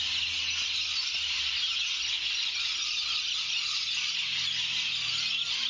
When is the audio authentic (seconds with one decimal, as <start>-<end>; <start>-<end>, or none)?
0.0-5.7